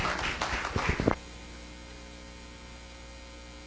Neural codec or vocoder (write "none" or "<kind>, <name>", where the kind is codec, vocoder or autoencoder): none